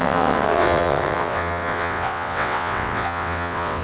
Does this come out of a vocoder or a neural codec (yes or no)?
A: yes